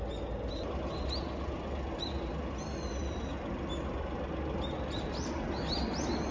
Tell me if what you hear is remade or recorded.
recorded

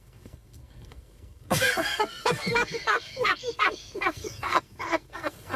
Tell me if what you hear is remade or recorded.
remade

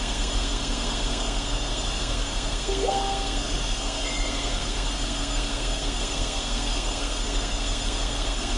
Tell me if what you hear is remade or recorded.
remade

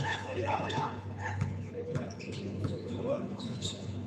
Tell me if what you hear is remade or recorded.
remade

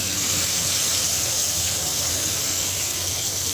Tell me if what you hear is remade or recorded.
remade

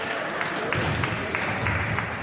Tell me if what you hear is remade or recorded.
recorded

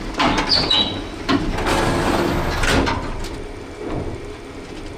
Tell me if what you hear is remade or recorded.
recorded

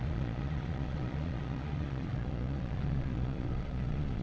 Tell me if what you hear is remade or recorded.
remade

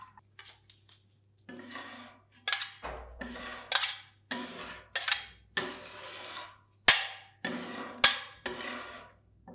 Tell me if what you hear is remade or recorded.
recorded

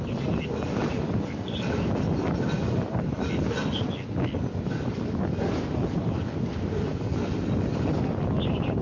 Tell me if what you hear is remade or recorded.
recorded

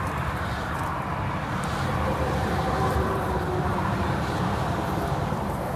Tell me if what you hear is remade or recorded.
remade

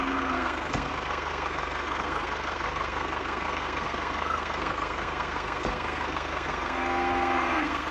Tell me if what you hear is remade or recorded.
remade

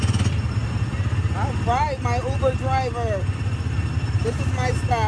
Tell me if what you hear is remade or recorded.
recorded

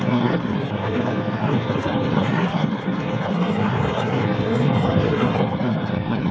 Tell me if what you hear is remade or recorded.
remade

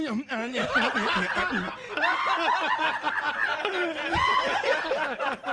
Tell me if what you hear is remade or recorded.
recorded